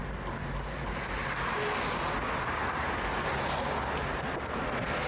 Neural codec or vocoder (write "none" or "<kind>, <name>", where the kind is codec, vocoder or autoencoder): none